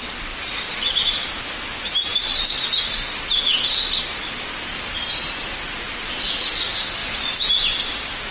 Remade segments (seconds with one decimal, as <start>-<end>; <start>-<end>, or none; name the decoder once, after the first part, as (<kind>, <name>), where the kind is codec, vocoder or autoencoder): none